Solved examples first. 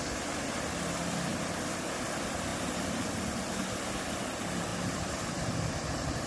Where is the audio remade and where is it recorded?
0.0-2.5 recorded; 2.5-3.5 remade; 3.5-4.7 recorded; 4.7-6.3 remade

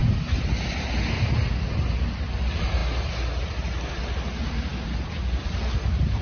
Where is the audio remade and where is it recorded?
0.0-6.2 recorded